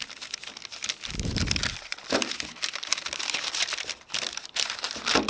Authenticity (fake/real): real